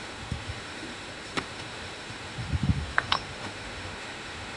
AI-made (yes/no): yes